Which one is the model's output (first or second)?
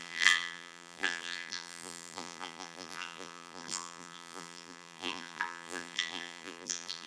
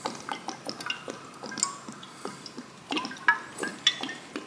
first